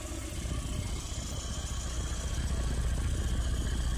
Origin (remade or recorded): recorded